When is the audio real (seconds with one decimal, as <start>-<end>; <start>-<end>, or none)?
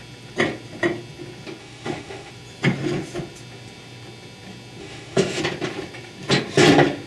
0.0-1.6; 2.3-4.8; 5.4-7.1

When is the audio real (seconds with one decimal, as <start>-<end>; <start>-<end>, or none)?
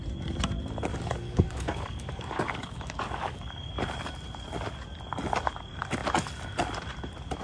0.0-0.9; 3.8-7.4